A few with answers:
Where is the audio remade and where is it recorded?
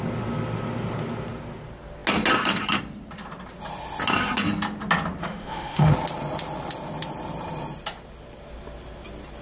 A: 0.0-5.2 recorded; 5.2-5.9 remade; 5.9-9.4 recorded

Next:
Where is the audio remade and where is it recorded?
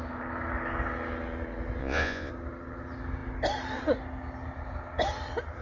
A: 0.0-1.8 recorded; 1.8-2.3 remade; 2.3-5.6 recorded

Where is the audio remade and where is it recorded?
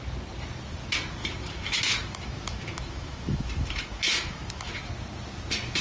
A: 0.0-1.2 recorded; 1.2-4.7 remade; 4.7-5.8 recorded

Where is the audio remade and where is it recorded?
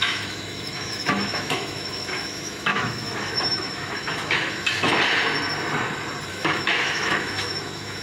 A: 0.0-4.9 remade; 4.9-6.3 recorded; 6.3-8.0 remade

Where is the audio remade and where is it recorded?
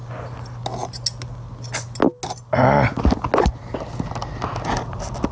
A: 0.0-5.3 recorded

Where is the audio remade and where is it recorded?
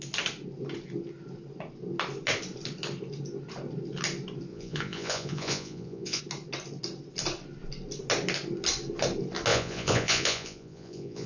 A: 0.0-4.5 recorded; 4.5-6.2 remade; 6.2-9.5 recorded; 9.5-11.3 remade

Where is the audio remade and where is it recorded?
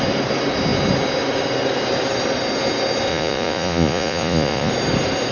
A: 0.0-3.1 recorded; 3.1-4.7 remade; 4.7-5.3 recorded